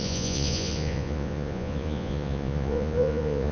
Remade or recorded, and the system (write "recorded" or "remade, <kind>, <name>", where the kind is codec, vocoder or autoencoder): remade, vocoder, Vocos